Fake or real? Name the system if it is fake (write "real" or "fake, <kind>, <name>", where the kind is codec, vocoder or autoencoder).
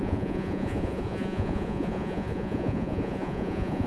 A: fake, vocoder, Vocos